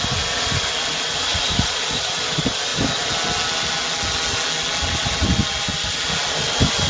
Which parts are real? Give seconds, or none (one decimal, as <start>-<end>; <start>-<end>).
0.0-1.3; 2.1-6.9